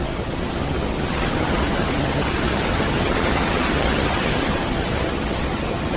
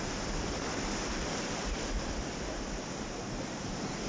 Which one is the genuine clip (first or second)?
second